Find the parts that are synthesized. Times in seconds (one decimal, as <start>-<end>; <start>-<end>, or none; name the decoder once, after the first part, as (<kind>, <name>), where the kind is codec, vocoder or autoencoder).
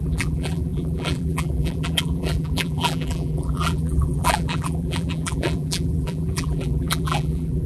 0.0-7.7 (vocoder, BigVGAN v2)